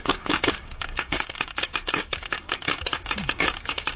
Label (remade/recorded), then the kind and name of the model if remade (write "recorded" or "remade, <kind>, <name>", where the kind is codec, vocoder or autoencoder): remade, codec, DAC